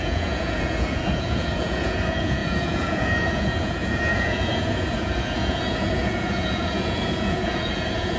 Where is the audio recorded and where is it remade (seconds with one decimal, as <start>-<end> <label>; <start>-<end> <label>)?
0.0-8.2 remade